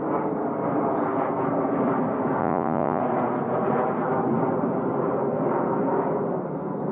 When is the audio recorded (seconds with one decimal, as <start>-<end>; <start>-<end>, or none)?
0.0-2.4; 3.0-6.9

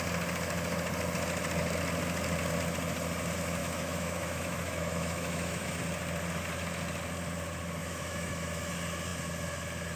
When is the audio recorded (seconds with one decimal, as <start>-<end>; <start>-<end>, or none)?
0.0-3.6; 5.8-7.8; 8.7-10.0